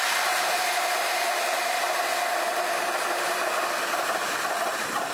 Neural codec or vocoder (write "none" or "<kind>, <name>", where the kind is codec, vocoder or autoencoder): none